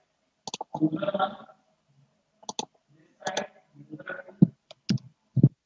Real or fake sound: real